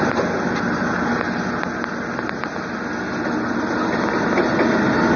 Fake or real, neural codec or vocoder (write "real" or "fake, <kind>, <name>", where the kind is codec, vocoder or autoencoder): real